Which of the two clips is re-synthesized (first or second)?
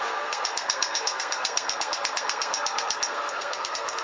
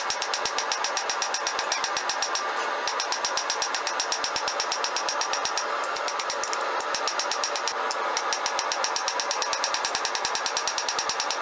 first